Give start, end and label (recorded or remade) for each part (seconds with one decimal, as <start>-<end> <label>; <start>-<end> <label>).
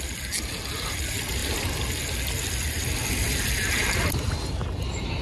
0.0-5.2 recorded